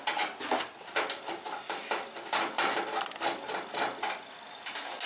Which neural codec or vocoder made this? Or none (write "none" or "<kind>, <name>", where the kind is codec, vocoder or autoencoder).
none